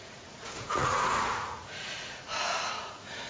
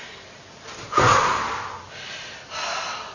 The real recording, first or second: second